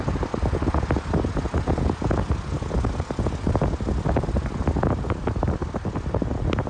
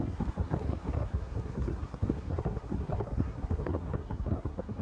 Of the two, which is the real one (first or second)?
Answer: first